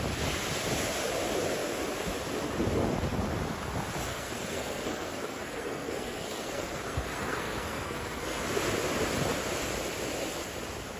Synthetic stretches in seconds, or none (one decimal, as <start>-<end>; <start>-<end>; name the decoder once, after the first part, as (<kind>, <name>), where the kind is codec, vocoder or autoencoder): 4.1-8.4 (codec, SNAC)